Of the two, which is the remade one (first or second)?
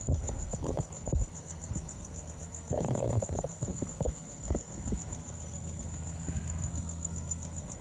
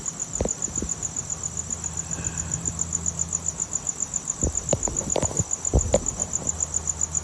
first